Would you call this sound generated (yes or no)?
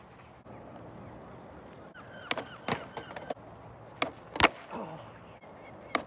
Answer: no